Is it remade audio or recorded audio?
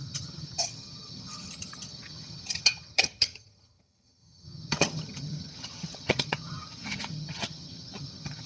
remade